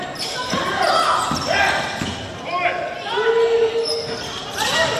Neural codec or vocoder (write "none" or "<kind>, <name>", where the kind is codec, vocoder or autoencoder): none